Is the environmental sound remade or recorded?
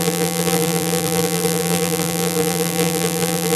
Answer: remade